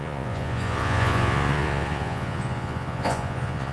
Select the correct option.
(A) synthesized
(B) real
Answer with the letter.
A